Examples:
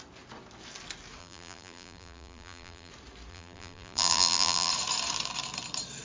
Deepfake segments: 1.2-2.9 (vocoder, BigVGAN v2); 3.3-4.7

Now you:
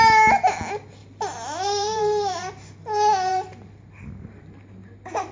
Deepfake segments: 1.0-2.7 (vocoder, BigVGAN v2); 3.3-4.4